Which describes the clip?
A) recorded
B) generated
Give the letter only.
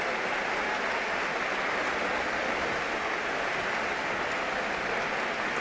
A